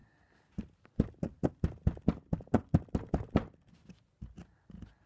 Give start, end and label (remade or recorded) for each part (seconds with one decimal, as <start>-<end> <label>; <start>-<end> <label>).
0.0-5.1 recorded